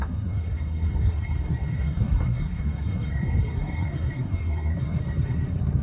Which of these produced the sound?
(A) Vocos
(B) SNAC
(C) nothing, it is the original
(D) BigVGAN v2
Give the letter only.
B